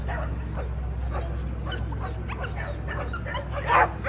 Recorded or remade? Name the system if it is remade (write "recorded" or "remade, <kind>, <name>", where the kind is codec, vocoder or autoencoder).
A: recorded